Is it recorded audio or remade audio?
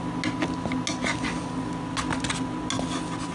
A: recorded